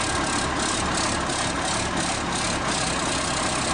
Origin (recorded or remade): recorded